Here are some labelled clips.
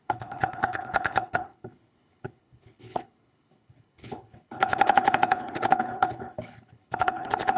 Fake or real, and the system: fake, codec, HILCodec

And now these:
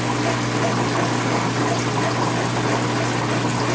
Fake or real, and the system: real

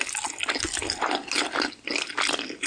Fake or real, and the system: real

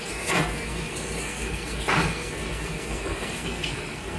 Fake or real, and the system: fake, codec, SNAC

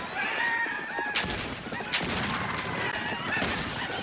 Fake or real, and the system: real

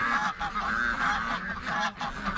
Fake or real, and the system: real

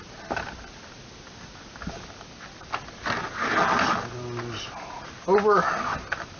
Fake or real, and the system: real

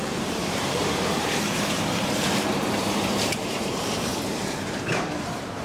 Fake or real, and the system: fake, vocoder, BigVGAN v2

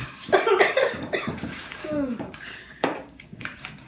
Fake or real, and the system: fake, codec, DAC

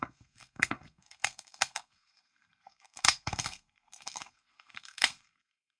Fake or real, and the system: fake, codec, SNAC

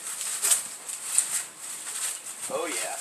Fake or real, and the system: fake, vocoder, BigVGAN v2